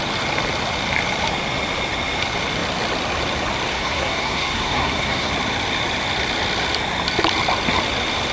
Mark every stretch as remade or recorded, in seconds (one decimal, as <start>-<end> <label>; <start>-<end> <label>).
0.0-3.7 recorded; 3.7-5.3 remade; 5.3-8.3 recorded

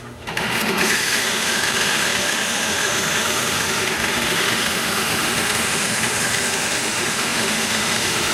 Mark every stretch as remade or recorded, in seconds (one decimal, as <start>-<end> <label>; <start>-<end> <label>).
0.0-8.3 remade

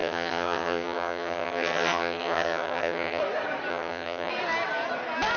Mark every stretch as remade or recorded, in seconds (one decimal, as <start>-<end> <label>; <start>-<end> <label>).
0.0-3.2 remade; 3.2-3.7 recorded; 3.7-4.3 remade; 4.3-5.4 recorded

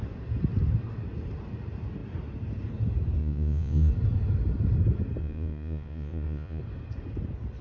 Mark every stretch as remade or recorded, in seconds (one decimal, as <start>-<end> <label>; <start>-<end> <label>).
0.0-3.2 recorded; 3.2-3.9 remade; 3.9-5.2 recorded; 5.2-6.6 remade; 6.6-7.6 recorded